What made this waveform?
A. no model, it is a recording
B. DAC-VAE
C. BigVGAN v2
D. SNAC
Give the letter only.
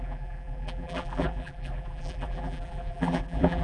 C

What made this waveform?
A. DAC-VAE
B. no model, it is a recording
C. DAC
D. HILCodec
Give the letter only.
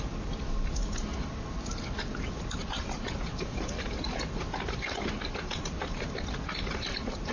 B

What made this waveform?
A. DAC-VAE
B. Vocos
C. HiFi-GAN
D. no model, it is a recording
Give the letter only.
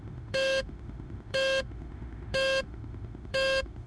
A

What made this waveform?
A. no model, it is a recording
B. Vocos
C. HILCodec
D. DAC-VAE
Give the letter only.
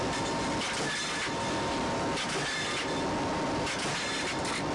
A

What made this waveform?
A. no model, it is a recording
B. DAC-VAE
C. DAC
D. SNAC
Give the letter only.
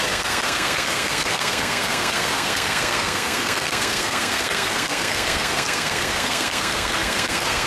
D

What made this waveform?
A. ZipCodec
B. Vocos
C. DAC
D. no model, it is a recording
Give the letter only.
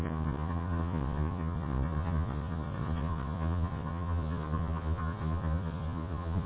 B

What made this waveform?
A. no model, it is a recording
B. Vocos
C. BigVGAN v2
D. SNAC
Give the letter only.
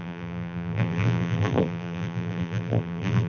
C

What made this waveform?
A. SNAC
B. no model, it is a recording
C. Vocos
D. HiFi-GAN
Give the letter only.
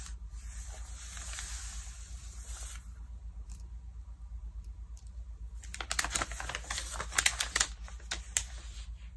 B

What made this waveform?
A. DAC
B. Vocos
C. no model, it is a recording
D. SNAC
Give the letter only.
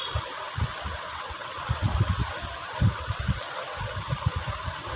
C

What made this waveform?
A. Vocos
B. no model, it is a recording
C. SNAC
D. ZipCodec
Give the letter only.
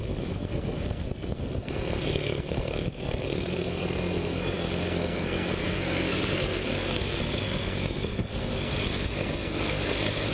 C